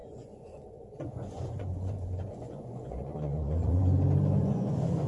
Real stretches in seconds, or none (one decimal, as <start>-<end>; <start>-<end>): 3.8-4.4

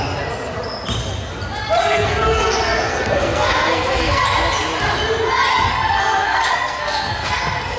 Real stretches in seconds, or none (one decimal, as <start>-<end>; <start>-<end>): 0.0-1.8; 4.2-5.5

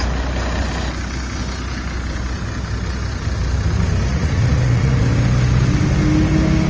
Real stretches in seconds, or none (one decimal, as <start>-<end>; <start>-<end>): 0.0-4.1; 5.0-6.7

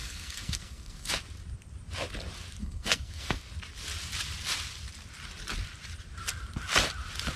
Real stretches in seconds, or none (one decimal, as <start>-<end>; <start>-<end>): 1.1-2.6; 3.4-7.4

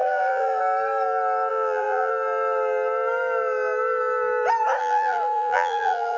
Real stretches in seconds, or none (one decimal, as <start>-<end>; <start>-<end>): 0.6-1.5; 2.1-4.8